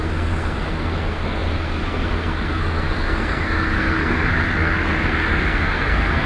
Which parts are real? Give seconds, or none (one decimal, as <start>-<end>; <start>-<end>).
none